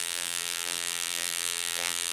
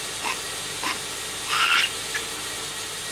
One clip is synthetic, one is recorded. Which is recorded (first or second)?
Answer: second